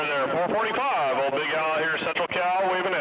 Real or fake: real